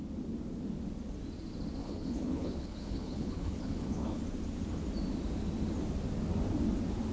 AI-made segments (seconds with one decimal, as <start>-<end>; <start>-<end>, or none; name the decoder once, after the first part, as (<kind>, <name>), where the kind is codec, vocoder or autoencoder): 1.8-4.2 (codec, HILCodec)